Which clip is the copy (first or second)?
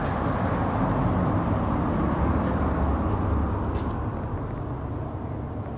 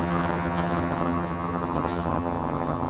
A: second